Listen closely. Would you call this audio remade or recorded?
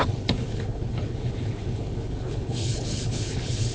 remade